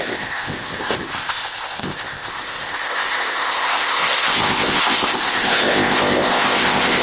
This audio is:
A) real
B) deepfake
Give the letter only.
B